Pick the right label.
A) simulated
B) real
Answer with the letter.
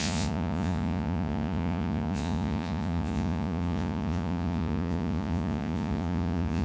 A